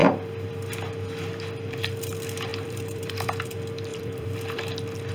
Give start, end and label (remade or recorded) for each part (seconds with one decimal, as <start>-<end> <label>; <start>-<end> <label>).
0.0-0.5 remade; 0.5-2.5 recorded; 2.5-3.1 remade; 3.1-3.9 recorded; 3.9-5.1 remade